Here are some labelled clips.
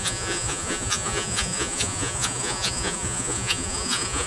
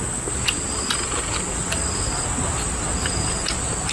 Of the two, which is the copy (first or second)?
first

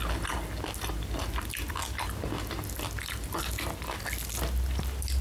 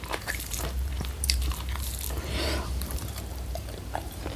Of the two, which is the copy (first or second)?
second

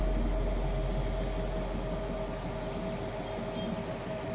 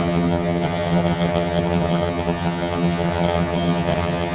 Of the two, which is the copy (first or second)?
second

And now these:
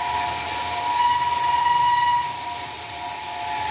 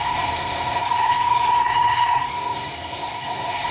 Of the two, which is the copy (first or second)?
second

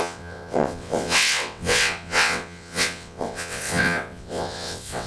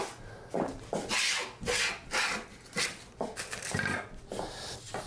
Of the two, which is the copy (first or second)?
first